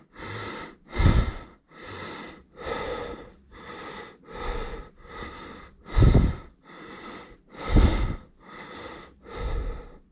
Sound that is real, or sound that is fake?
real